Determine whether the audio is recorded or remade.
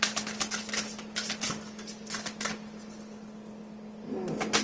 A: recorded